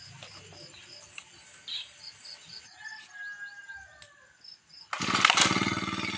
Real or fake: real